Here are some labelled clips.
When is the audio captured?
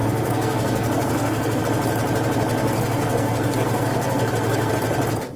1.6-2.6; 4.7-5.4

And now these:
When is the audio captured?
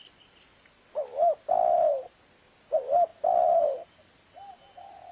0.0-5.1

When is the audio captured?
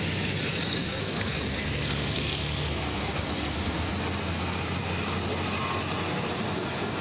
0.0-0.8; 3.9-7.0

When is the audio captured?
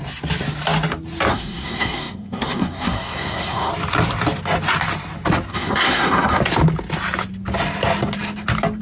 0.0-1.3; 3.7-5.5; 6.4-8.8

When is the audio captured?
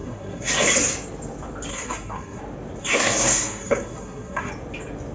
0.5-1.7; 2.4-2.8; 4.5-5.1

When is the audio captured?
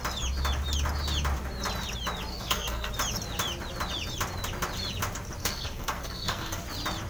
0.0-2.3; 2.9-5.4; 6.6-7.1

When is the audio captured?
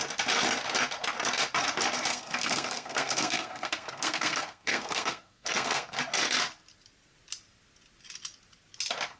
0.0-2.1; 6.0-9.2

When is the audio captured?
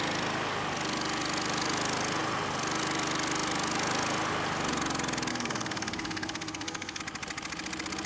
0.0-5.3; 7.0-8.1